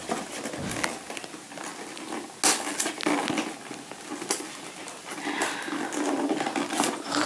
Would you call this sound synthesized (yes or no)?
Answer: no